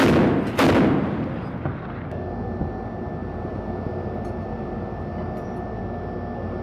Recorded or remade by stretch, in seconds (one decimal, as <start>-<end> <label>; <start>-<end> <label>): 0.0-3.2 recorded; 3.2-5.8 remade; 5.8-6.6 recorded